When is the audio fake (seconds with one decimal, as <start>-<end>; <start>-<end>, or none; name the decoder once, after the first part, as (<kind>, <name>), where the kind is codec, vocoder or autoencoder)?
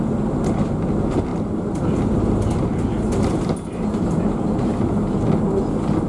none